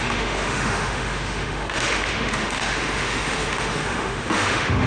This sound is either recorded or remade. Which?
remade